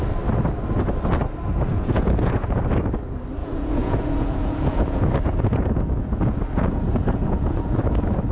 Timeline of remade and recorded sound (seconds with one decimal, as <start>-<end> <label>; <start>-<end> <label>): 0.0-1.7 recorded; 1.7-2.6 remade; 2.6-3.4 recorded; 3.4-7.8 remade; 7.8-8.3 recorded